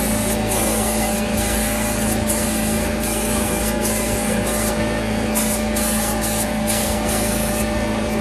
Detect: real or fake fake